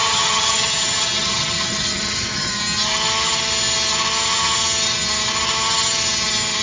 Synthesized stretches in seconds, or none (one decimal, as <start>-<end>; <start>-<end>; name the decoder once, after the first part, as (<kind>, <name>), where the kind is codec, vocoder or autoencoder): 0.0-2.6 (vocoder, HiFi-GAN)